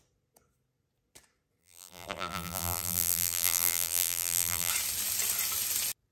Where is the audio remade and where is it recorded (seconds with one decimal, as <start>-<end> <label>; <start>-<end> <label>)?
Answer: 0.0-1.6 recorded; 1.6-4.7 remade; 4.7-6.1 recorded